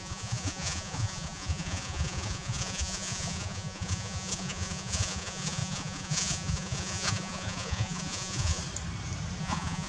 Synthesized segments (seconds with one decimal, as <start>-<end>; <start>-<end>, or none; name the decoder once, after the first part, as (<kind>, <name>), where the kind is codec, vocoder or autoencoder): 0.0-8.6 (vocoder, Vocos); 9.4-9.9